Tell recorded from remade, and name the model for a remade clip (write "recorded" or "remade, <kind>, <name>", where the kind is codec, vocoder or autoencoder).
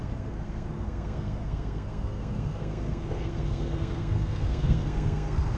remade, codec, SNAC